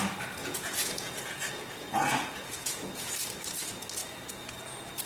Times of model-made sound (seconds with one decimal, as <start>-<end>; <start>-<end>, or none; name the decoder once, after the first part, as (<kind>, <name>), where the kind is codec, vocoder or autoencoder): 0.4-3.1 (vocoder, Vocos); 4.0-5.1